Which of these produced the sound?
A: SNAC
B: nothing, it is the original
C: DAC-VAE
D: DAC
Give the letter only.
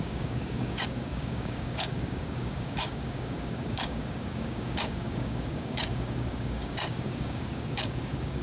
D